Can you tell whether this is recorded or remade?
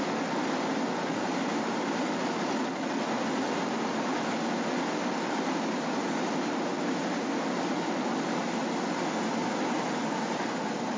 recorded